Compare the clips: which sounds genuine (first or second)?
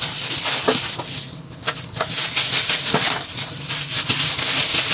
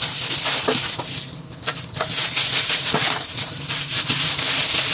first